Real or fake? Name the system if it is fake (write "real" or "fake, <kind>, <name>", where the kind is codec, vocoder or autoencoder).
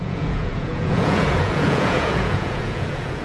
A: fake, vocoder, Vocos